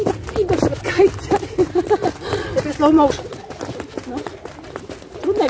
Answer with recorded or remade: recorded